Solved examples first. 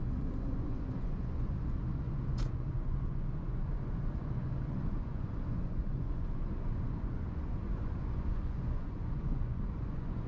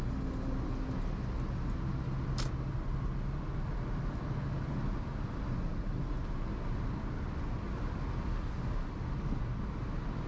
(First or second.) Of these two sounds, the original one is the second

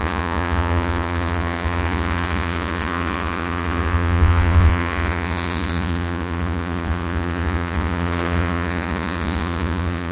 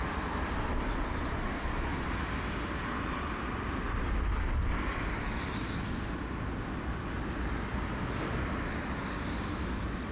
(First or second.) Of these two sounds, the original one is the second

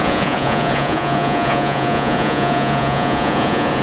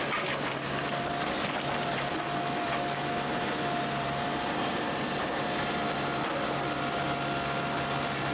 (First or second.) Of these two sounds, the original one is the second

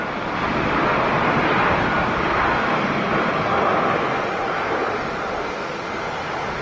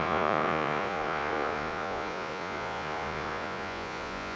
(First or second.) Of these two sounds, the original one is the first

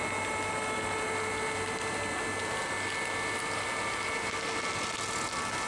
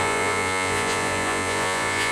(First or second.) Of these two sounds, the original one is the first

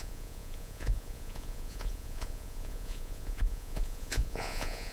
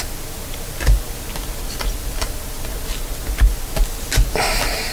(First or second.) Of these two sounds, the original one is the second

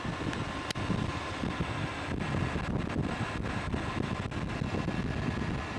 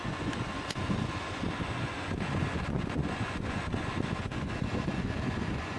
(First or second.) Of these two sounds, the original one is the first